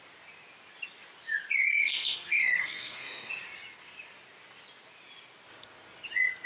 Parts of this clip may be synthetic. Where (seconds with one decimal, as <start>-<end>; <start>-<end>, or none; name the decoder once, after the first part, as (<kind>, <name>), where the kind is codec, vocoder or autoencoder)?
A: 1.7-3.3 (codec, SNAC)